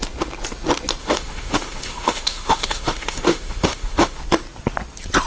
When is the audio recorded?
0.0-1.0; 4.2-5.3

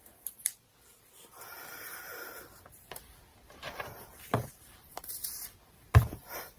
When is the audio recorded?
0.7-2.7